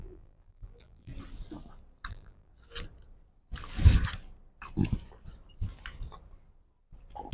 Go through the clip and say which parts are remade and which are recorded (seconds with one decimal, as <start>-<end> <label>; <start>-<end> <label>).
0.0-1.1 remade; 1.1-2.1 recorded; 2.1-2.5 remade; 2.5-7.3 recorded